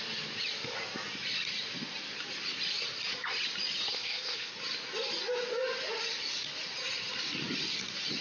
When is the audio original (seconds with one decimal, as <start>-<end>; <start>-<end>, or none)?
0.0-3.9; 4.5-8.2